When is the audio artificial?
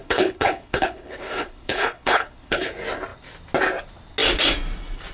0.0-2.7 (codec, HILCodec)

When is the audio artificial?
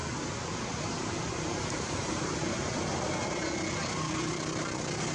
none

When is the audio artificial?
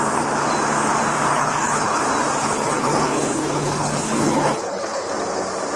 1.3-2.0 (codec, HILCodec); 2.4-5.1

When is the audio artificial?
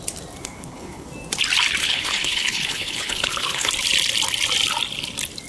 0.4-1.1 (codec, HILCodec); 1.8-3.7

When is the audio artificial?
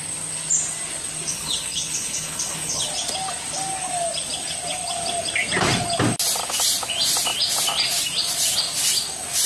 1.3-2.9 (codec, HILCodec)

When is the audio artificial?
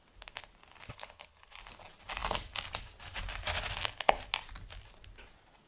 0.9-1.6 (codec, HILCodec)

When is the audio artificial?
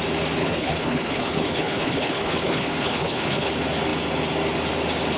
0.4-3.5 (codec, HILCodec)